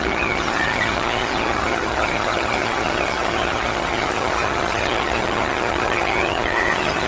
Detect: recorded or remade remade